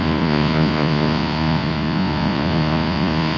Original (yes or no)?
no